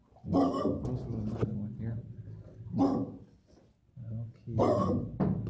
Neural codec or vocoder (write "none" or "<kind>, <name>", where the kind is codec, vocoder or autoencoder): none